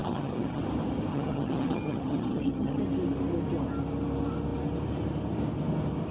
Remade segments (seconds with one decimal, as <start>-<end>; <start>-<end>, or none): 0.0-0.6; 1.1-2.8